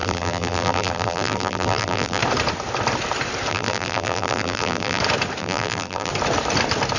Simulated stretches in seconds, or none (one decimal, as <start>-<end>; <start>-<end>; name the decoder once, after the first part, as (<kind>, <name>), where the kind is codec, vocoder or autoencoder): 0.0-2.2 (vocoder, BigVGAN v2); 3.5-5.0; 5.4-6.1